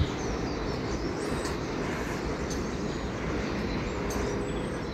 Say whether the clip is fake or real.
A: fake